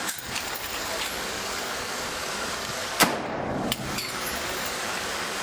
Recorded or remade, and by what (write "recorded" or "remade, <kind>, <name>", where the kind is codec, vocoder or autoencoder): remade, codec, DAC